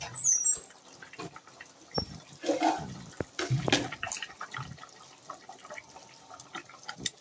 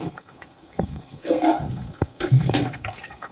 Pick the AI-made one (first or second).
second